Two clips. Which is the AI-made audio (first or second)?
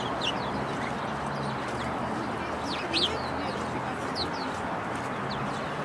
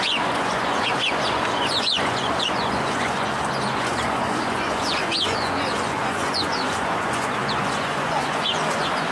second